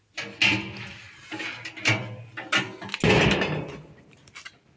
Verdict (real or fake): real